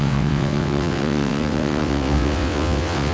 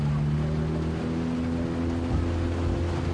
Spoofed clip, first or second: first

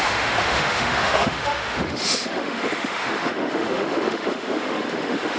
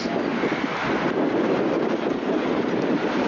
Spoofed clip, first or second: first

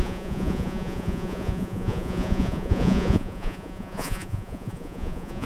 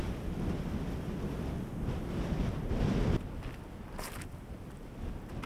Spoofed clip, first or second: first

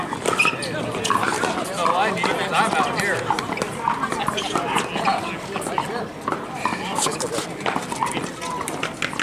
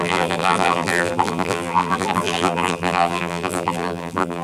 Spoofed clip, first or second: second